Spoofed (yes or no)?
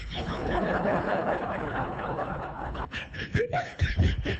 yes